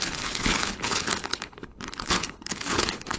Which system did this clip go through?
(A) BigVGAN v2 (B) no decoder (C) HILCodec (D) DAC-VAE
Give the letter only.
C